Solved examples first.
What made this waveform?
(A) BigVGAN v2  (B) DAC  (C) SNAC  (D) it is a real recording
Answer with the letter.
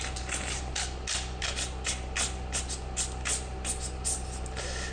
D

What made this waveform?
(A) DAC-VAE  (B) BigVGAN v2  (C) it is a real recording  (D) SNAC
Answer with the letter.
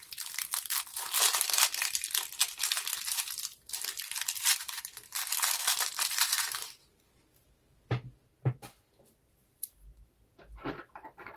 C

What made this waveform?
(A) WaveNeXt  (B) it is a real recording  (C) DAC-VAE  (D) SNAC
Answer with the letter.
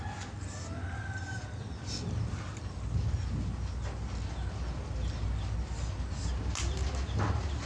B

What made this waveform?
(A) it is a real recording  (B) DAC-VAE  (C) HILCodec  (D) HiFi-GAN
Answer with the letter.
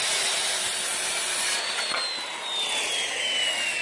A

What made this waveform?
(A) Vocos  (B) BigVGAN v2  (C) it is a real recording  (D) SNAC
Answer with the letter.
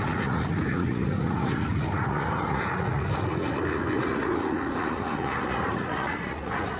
A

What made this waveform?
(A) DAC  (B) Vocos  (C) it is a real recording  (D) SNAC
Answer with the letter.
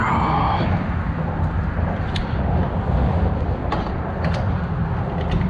C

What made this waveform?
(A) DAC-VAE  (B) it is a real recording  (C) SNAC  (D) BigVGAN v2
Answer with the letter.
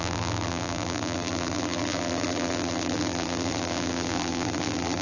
D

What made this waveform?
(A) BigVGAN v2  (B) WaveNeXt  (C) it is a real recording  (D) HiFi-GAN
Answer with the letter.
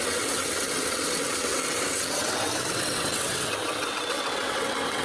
B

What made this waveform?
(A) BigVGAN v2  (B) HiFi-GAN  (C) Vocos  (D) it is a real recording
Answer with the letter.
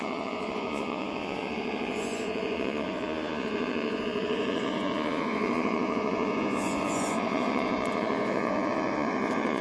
C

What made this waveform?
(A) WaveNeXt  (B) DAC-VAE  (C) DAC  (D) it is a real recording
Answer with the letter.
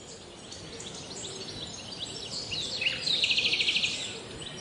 D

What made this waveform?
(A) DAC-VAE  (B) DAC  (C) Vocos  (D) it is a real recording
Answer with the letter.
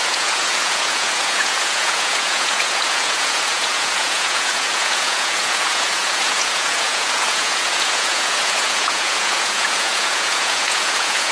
C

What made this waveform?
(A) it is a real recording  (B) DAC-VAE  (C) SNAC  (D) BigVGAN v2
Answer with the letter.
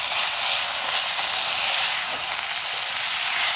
A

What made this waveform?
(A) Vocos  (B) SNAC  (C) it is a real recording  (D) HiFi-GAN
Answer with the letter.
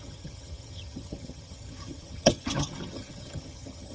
D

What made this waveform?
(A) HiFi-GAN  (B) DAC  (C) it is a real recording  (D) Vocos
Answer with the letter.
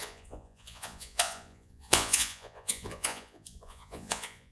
D